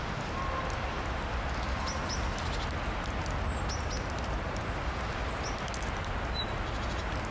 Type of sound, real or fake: real